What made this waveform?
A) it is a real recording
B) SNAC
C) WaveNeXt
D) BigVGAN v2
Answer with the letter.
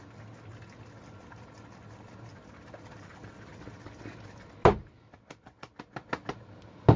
A